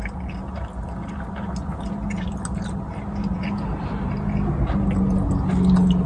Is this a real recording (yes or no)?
yes